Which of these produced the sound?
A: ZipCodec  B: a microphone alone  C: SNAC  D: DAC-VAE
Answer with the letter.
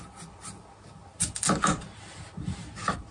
B